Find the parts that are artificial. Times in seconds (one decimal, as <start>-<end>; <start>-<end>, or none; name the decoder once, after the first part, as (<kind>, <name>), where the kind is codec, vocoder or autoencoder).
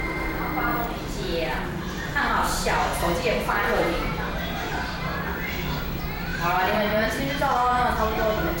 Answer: 0.7-4.4 (vocoder, BigVGAN v2); 6.3-7.2